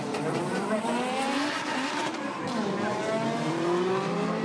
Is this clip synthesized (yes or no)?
yes